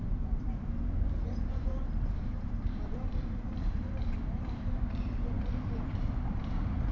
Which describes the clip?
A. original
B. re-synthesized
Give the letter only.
B